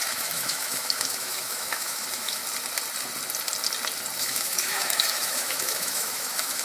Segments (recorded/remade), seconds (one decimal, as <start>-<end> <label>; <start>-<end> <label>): 0.0-2.4 remade; 2.4-4.2 recorded; 4.2-6.6 remade